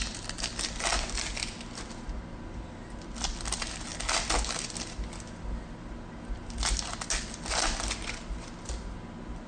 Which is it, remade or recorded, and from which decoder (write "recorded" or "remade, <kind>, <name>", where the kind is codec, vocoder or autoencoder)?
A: recorded